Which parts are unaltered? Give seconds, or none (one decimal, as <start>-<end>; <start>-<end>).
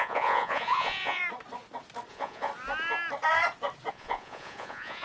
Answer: 1.2-2.1; 2.5-3.9